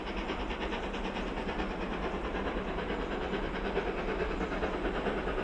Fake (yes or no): no